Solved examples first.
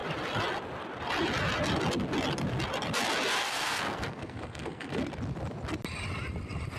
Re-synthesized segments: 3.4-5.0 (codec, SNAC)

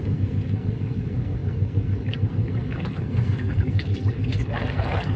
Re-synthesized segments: 0.0-5.2 (codec, SNAC)